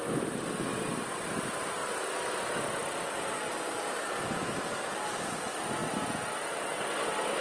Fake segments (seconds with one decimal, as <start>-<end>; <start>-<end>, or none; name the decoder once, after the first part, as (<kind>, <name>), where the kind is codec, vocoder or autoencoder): 2.8-3.5 (vocoder, BigVGAN v2); 5.8-6.8